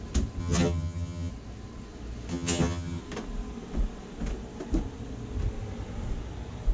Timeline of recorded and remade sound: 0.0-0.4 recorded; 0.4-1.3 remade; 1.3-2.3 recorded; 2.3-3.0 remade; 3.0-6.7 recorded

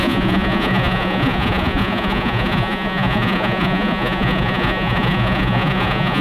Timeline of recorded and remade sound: 0.0-6.2 remade